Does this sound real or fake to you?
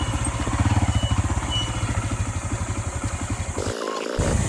real